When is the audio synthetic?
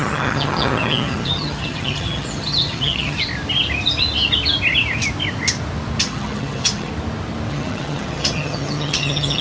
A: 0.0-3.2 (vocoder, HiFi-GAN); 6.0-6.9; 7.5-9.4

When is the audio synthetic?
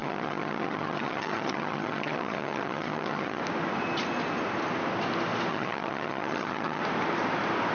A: 0.0-3.4 (vocoder, HiFi-GAN); 5.5-6.8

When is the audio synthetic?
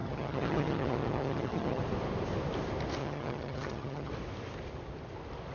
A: 0.0-1.8 (vocoder, HiFi-GAN); 3.0-4.1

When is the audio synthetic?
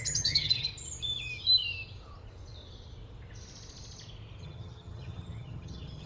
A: 0.0-0.7 (vocoder, HiFi-GAN); 4.4-6.1